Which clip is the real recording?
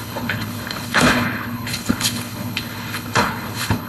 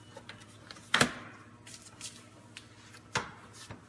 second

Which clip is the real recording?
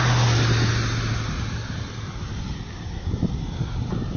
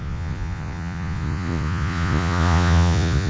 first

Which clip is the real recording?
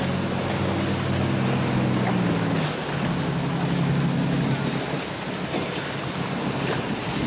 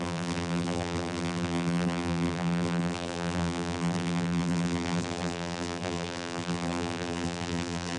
first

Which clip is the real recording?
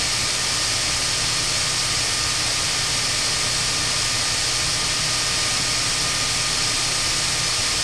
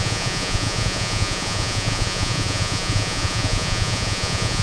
first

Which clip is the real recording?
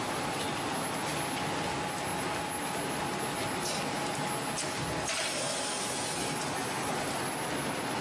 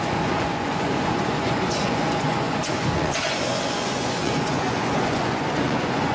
first